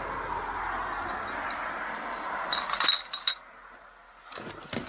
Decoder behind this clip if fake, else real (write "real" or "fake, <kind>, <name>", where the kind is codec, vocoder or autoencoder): real